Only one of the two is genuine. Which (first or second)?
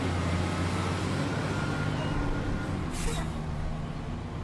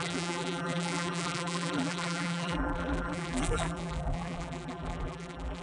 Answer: first